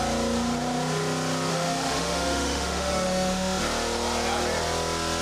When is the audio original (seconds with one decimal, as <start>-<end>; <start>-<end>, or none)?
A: 0.0-1.5; 3.6-5.2